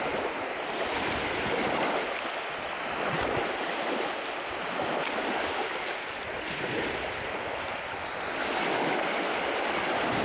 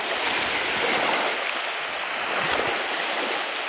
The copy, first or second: first